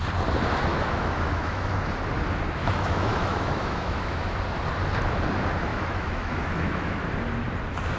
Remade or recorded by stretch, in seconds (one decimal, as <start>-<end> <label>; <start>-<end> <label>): 0.0-0.7 recorded; 0.7-1.7 remade; 1.7-2.6 recorded; 2.6-4.4 remade; 4.4-5.7 recorded; 5.7-7.0 remade; 7.0-8.0 recorded